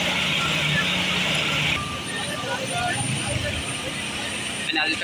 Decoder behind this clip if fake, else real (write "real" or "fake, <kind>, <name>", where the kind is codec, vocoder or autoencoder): real